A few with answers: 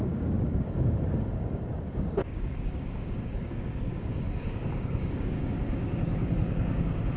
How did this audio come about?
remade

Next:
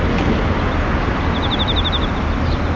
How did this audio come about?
recorded